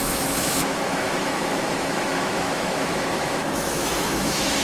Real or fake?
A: fake